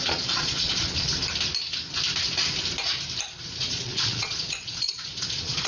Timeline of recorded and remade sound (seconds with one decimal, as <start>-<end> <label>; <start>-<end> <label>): 0.0-1.1 remade; 1.1-3.6 recorded; 3.6-5.7 remade